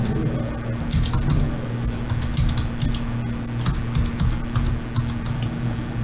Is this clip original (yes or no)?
yes